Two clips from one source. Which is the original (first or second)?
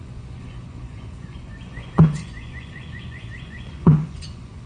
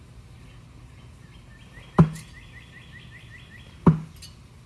second